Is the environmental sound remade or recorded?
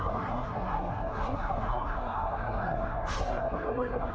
remade